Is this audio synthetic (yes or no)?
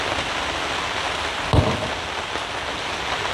no